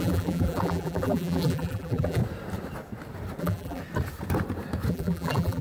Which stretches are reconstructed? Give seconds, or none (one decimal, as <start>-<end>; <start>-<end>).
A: 0.0-2.2; 3.4-3.8; 4.9-5.6